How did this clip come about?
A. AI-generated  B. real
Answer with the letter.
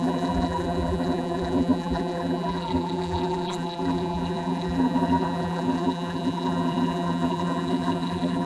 A